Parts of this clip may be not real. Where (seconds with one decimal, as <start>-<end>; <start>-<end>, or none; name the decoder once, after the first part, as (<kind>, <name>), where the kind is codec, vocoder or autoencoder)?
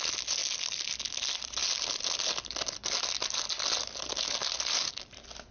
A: none